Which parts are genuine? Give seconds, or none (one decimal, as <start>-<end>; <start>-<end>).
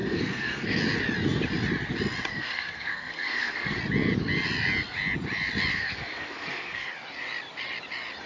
0.8-2.3; 3.8-5.7; 6.9-8.3